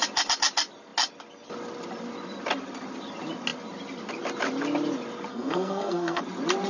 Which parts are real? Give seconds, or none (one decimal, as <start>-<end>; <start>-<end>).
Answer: 0.0-5.3; 6.2-6.7